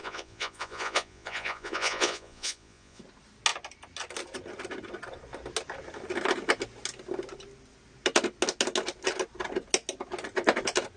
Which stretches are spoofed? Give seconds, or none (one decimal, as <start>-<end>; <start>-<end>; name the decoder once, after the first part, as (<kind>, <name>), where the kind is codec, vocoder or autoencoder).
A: 0.0-3.0 (vocoder, Vocos)